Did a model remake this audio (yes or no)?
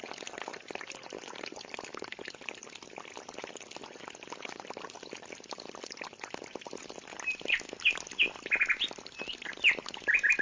no